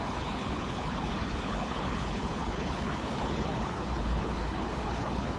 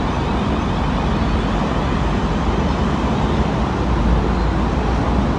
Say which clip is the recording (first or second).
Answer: second